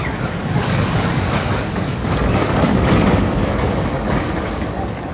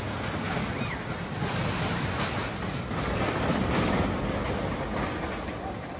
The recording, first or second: second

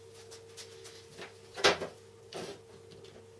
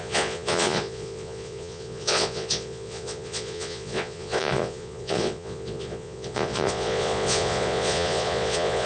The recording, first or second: first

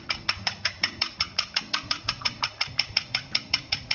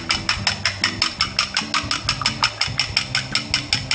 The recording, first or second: second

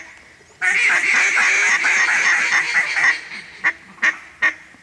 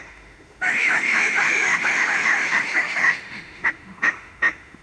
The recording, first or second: first